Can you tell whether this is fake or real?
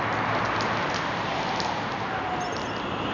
real